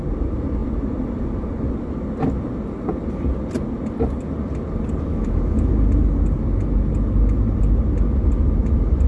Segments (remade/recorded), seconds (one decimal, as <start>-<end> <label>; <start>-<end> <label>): 0.0-5.1 recorded; 5.1-5.7 remade; 5.7-9.1 recorded

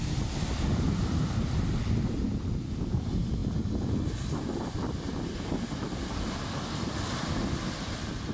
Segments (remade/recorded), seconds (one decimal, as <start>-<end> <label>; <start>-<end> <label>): 0.0-8.3 recorded

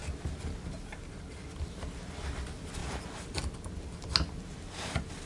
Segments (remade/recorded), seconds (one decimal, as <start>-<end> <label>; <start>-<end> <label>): 0.0-5.3 recorded